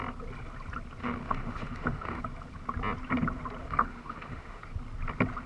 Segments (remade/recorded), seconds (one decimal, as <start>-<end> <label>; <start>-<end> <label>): 0.0-1.0 recorded; 1.0-2.2 remade; 2.2-3.6 recorded; 3.6-4.6 remade; 4.6-5.5 recorded